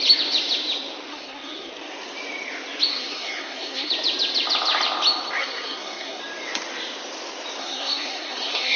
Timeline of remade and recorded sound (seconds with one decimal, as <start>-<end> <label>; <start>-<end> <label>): 0.0-1.1 recorded; 1.1-1.7 remade; 1.7-2.9 recorded; 2.9-3.9 remade; 3.9-5.4 recorded; 5.4-6.2 remade; 6.2-7.6 recorded; 7.6-8.8 remade